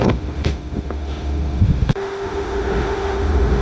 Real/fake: fake